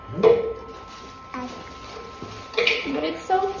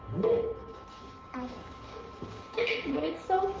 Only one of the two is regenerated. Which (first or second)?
second